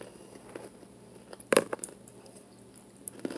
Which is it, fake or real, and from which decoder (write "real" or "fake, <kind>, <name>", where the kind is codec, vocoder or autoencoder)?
real